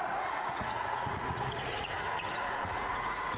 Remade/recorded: remade